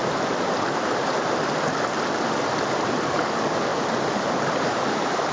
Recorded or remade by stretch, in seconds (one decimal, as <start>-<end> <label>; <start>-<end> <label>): 0.0-3.0 recorded; 3.0-3.7 remade; 3.7-4.6 recorded; 4.6-5.3 remade